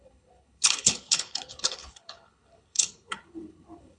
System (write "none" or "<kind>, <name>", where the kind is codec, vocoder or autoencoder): codec, HILCodec